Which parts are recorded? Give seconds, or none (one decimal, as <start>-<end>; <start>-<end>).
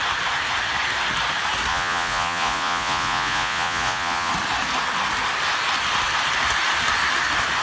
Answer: 0.0-1.7; 4.3-7.6